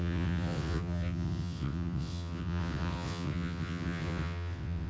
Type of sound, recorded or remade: remade